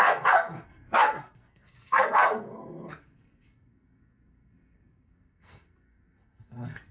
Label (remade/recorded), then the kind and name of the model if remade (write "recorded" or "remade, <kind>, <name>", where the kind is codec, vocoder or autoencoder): remade, codec, SNAC